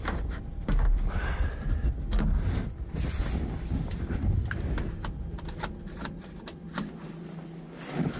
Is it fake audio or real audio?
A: real